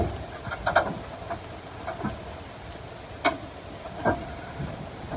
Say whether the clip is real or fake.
real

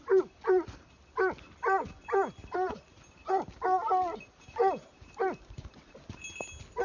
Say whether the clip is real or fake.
real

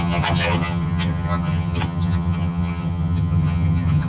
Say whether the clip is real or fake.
fake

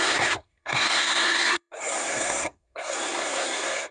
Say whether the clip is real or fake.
fake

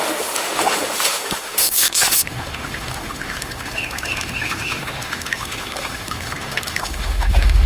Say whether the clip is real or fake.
fake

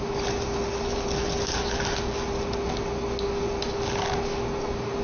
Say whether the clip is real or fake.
real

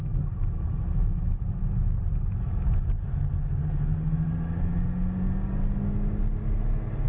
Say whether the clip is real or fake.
real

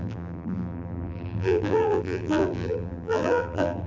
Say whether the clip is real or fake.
fake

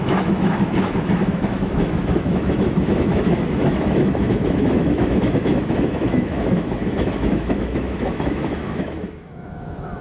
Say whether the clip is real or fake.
fake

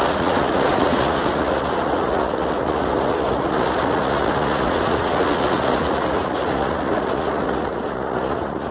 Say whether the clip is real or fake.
fake